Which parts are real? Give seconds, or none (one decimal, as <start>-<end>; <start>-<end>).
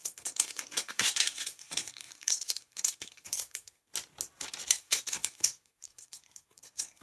3.9-4.7